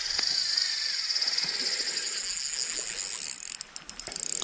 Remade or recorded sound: recorded